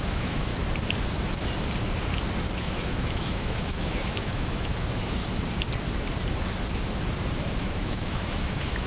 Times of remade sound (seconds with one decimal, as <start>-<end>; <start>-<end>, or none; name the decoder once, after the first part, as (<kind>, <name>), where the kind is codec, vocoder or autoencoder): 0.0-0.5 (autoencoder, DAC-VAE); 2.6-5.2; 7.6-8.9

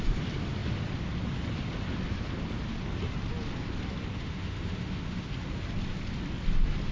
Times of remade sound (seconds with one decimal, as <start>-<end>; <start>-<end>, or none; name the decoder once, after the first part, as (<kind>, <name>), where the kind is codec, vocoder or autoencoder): 4.1-5.3 (autoencoder, DAC-VAE)

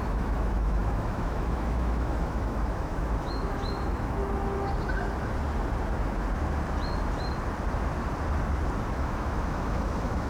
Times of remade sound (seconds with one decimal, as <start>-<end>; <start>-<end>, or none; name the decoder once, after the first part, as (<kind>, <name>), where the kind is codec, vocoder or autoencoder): 0.0-4.2 (autoencoder, DAC-VAE); 8.9-10.3

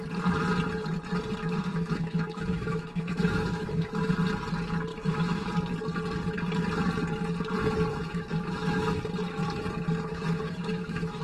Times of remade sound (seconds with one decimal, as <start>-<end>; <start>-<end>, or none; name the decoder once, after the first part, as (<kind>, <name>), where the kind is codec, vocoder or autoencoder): 1.4-4.1 (autoencoder, DAC-VAE); 4.9-5.5; 7.9-9.0; 10.1-11.2